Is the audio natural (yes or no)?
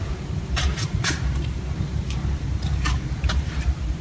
no